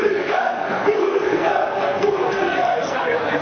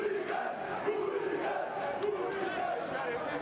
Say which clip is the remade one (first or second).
first